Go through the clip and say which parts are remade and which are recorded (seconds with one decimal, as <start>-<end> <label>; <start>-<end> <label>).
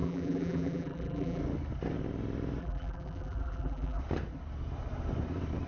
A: 0.0-1.4 remade; 1.4-2.6 recorded; 2.6-4.0 remade; 4.0-5.7 recorded